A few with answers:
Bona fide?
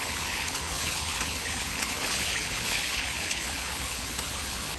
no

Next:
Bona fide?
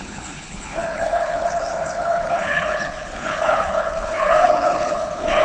no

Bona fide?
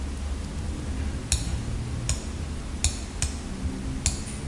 yes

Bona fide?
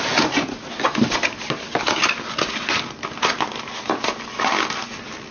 yes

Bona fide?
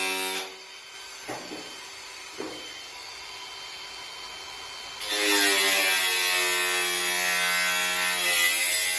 yes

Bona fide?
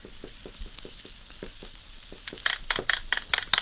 yes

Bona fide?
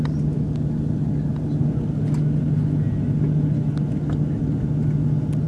yes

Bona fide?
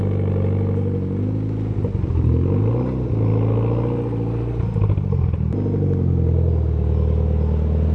yes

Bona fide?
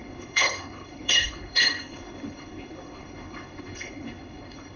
no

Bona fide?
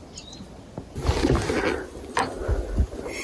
yes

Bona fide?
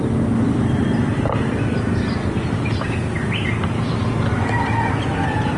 yes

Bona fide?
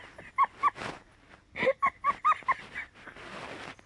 yes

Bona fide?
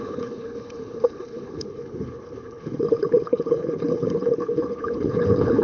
no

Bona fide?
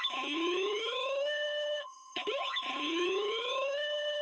no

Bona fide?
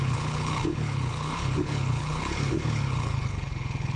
no